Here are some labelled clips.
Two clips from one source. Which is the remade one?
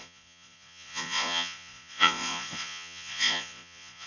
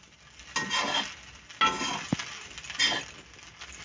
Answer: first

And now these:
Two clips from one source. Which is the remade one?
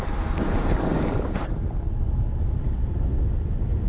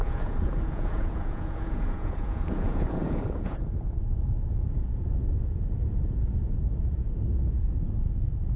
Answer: second